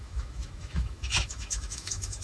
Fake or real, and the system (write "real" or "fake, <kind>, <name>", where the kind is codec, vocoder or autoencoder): fake, autoencoder, DAC-VAE